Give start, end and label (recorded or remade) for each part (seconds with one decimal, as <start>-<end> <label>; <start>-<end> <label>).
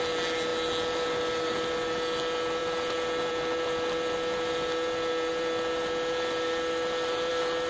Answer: 0.0-7.7 recorded